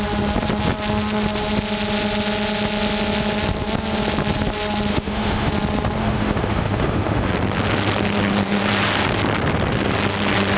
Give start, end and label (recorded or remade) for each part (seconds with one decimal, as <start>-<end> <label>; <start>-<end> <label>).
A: 0.0-4.9 recorded; 4.9-5.5 remade; 5.5-6.0 recorded; 6.0-7.3 remade; 7.3-10.6 recorded